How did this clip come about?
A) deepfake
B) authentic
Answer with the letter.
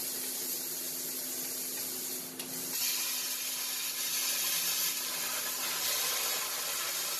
B